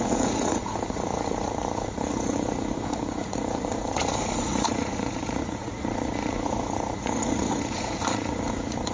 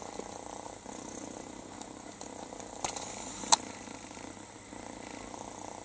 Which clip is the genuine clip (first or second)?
second